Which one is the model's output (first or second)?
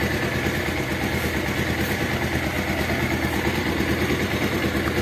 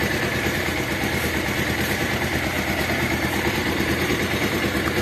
second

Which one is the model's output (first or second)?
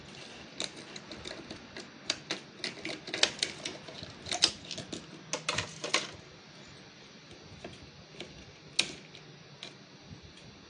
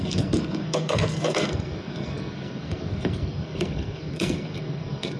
second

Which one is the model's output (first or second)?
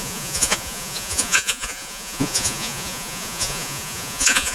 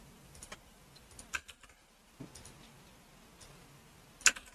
first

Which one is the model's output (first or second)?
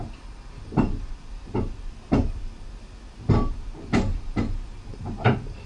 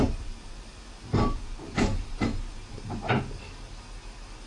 first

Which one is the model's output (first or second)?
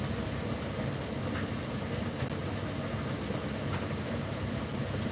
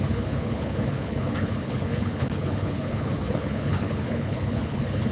second